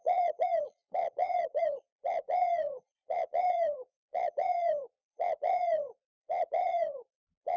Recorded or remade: remade